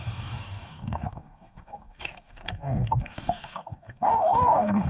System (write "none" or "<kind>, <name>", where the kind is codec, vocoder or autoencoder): codec, DAC